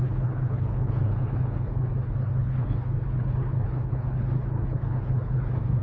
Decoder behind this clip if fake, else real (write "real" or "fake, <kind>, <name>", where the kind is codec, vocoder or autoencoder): fake, codec, HILCodec